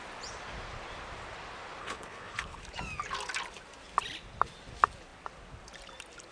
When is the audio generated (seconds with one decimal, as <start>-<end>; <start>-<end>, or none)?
1.8-2.6